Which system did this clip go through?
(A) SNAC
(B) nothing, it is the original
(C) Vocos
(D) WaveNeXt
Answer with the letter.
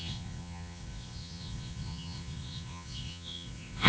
C